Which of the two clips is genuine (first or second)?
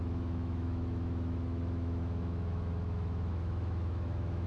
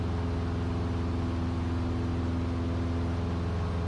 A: second